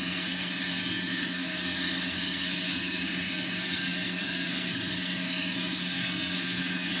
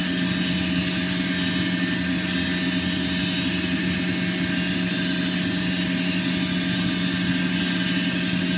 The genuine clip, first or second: second